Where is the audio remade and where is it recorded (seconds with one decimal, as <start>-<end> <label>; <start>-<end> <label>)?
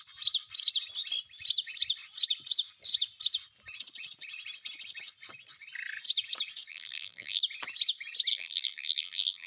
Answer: 0.0-6.7 recorded; 6.7-7.4 remade; 7.4-8.3 recorded; 8.3-9.5 remade